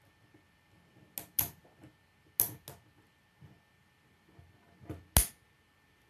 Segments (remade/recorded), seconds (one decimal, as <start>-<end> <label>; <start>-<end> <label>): 0.0-6.1 recorded